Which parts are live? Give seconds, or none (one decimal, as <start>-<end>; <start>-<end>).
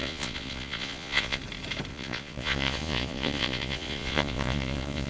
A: 1.4-1.9